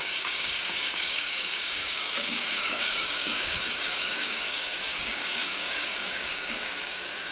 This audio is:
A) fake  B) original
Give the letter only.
A